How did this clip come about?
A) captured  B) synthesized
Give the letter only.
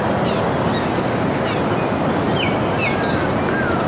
A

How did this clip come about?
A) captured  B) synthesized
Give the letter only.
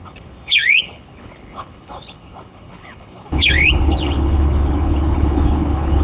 B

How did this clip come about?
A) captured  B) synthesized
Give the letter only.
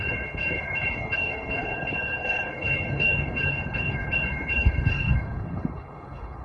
B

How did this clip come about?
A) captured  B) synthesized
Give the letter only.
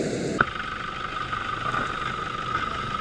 A